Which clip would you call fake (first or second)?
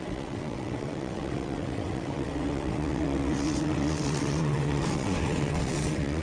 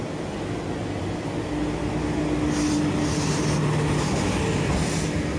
first